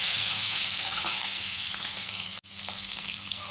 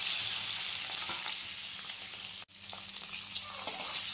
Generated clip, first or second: first